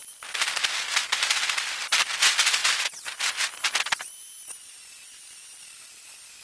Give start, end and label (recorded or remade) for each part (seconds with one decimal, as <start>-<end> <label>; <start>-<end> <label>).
0.0-6.4 recorded